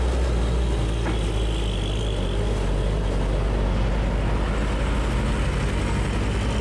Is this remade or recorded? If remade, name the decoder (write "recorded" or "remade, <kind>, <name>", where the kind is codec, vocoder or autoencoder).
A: recorded